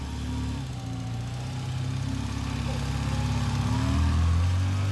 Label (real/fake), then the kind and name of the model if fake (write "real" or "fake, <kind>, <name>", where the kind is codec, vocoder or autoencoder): real